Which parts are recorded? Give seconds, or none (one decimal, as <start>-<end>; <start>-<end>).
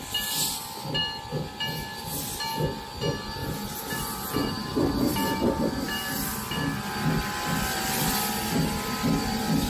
0.0-3.4; 6.3-9.7